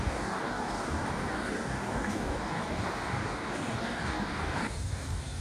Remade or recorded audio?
remade